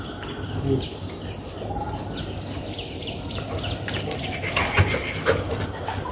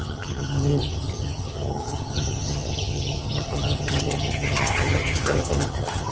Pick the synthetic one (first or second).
second